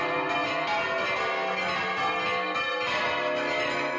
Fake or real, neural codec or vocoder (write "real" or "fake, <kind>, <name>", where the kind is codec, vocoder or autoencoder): real